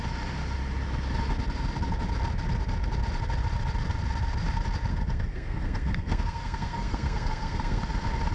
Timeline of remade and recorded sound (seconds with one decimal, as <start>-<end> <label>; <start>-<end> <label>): 0.0-4.9 recorded; 4.9-7.8 remade; 7.8-8.3 recorded